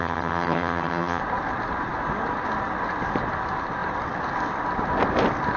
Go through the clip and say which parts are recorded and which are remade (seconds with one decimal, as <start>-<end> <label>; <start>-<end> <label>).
0.0-1.2 remade; 1.2-5.6 recorded